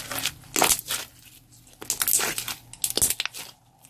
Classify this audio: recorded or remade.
recorded